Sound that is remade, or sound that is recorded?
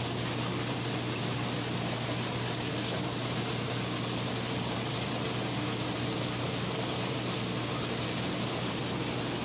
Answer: recorded